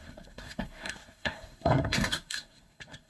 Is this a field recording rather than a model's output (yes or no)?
no